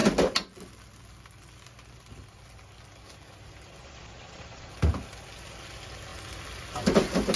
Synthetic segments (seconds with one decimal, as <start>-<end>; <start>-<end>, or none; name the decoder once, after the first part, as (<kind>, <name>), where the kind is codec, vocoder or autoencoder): 3.8-4.7 (vocoder, Vocos)